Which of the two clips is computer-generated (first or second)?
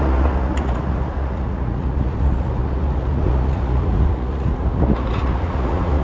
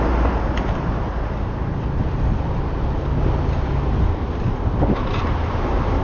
first